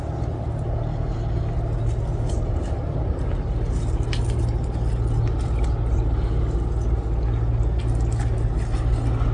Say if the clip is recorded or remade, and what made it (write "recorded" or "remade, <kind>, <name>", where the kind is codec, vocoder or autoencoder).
recorded